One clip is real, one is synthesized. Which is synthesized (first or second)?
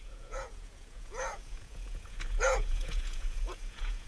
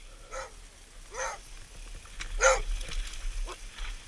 first